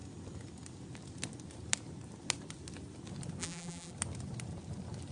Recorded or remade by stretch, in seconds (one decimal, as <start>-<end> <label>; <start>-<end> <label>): 0.0-3.4 recorded; 3.4-3.9 remade; 3.9-5.1 recorded